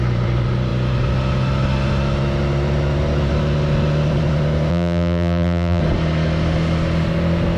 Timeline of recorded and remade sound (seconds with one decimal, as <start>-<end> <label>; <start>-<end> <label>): 0.0-4.7 recorded; 4.7-5.8 remade; 5.8-7.6 recorded